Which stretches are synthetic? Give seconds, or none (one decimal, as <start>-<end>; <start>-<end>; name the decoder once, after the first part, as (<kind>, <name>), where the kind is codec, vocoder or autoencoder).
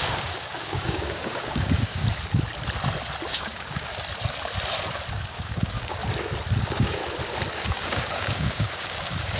0.0-2.0 (codec, DAC); 3.3-3.9; 5.1-6.0; 6.6-7.0; 7.6-9.4